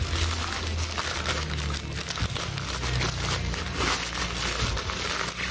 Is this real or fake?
real